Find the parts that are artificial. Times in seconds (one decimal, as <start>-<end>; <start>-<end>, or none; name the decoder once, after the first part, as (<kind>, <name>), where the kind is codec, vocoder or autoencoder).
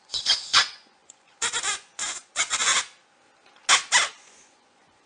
0.0-2.7 (vocoder, Vocos); 4.1-5.1